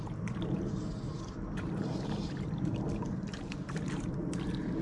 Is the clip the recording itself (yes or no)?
no